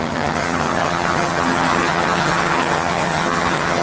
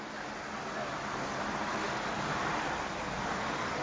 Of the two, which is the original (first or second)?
second